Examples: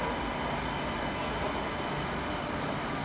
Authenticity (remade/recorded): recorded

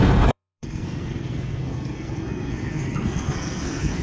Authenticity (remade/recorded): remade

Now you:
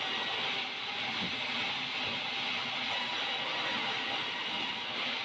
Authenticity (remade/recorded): recorded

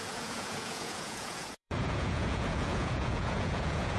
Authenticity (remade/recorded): remade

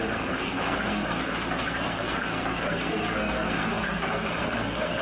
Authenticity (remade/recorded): remade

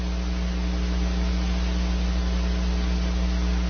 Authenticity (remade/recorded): recorded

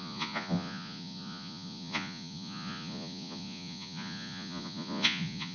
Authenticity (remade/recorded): remade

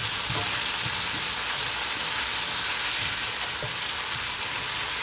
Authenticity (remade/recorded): recorded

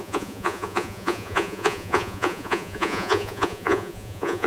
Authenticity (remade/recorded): remade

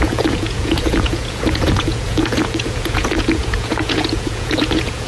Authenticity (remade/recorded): remade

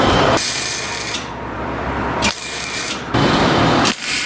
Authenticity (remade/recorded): remade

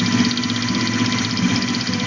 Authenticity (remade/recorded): recorded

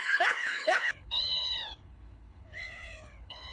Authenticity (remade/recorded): remade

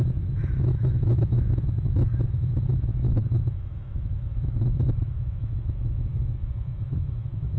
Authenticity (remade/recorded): remade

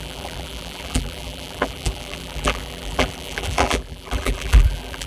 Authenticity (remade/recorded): remade